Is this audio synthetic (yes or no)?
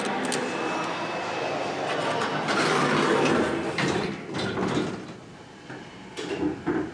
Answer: no